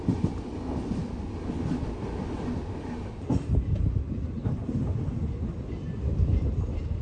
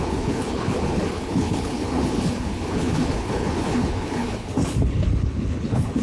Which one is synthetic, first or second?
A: second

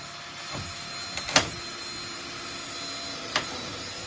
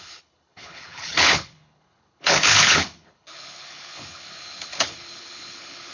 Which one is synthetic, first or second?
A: second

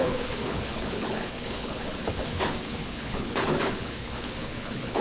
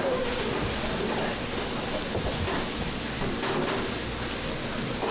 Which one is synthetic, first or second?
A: first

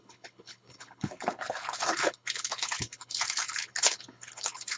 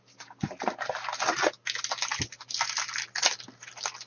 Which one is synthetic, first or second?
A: first